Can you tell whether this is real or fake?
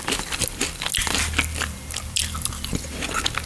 real